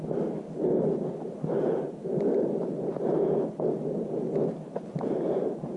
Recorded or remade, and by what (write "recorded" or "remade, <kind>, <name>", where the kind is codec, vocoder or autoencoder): recorded